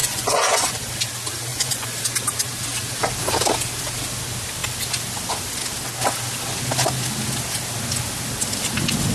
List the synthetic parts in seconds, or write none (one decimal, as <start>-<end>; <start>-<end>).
0.0-0.8; 1.5-2.0